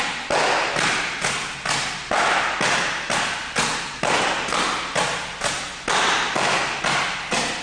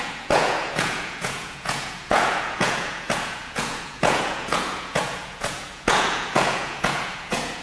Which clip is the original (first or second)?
first